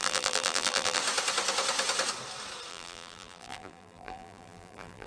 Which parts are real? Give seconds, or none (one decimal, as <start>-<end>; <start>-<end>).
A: 1.0-2.7